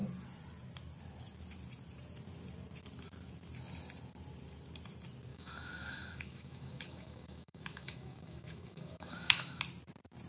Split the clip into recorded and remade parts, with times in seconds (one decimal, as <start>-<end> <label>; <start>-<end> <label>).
0.0-5.3 recorded; 5.3-9.6 remade; 9.6-10.3 recorded